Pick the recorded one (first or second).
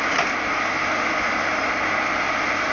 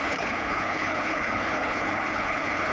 first